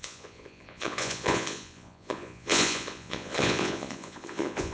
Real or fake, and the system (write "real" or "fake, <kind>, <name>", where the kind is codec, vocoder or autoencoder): fake, vocoder, Vocos